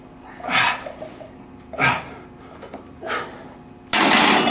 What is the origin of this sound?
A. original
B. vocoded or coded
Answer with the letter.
A